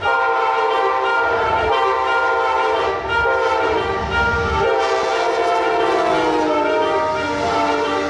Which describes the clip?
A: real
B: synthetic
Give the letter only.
A